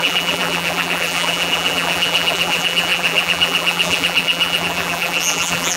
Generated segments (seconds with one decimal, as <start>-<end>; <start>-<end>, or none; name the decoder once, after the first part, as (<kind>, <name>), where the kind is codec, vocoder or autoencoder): 0.0-5.8 (vocoder, BigVGAN v2)